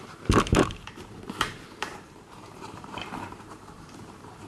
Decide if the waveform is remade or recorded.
remade